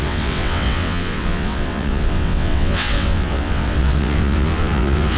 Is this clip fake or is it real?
fake